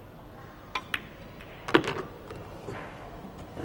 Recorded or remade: recorded